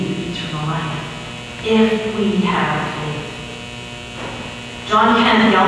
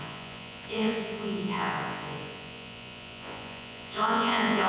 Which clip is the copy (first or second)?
second